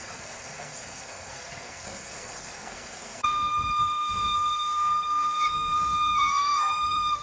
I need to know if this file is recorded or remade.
remade